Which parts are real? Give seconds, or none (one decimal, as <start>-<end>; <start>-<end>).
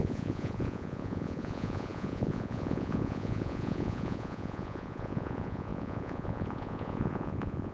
none